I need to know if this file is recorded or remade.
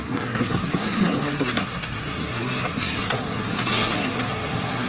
remade